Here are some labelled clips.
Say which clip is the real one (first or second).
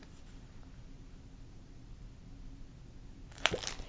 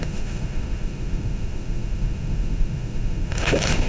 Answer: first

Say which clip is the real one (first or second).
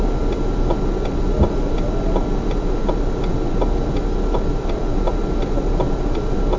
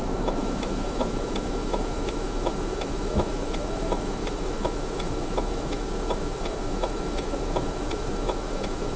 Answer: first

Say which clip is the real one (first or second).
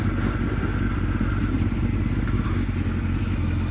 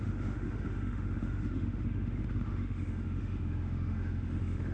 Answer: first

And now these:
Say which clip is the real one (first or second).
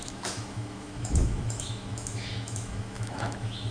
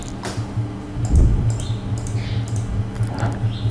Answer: second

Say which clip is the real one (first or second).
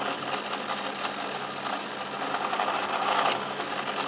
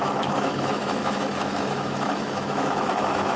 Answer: first